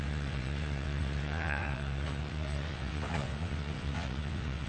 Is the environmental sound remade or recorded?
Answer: remade